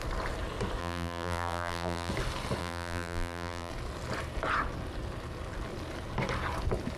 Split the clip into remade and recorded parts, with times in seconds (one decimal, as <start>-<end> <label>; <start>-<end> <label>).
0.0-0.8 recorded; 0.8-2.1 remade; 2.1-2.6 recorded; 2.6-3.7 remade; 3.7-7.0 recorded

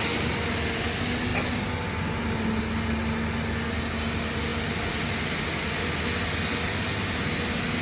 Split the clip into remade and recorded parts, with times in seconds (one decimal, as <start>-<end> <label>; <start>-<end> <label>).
0.0-7.8 recorded

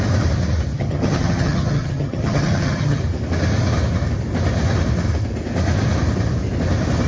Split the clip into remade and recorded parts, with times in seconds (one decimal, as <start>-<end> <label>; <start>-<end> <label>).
0.0-0.7 recorded; 0.7-3.0 remade; 3.0-7.1 recorded

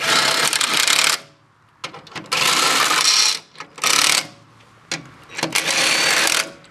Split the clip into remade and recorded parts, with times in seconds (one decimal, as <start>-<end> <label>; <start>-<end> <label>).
0.0-6.7 recorded

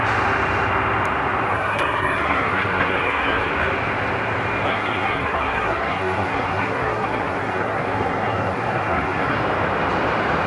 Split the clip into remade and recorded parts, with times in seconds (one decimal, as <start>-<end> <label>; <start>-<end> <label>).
0.0-1.5 recorded; 1.5-3.5 remade; 3.5-4.7 recorded; 4.7-9.4 remade; 9.4-10.5 recorded